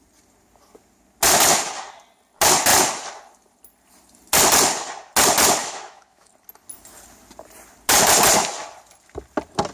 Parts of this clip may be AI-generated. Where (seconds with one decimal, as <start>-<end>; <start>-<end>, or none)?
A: 5.6-6.3